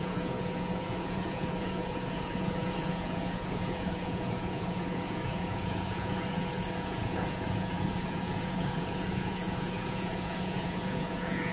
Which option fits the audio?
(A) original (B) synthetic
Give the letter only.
B